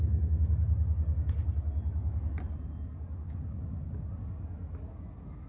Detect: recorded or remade recorded